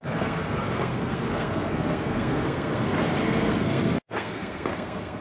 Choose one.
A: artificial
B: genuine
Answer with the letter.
A